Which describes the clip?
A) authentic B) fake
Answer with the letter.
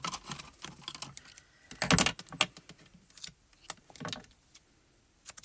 A